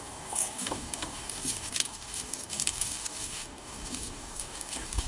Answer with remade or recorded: remade